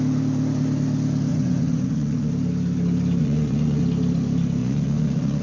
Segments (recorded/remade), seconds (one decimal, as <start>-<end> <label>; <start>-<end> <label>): 0.0-1.3 recorded; 1.3-2.3 remade; 2.3-3.2 recorded; 3.2-3.8 remade; 3.8-4.6 recorded; 4.6-5.4 remade